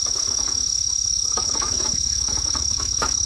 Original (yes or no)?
no